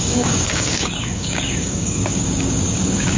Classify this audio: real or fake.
fake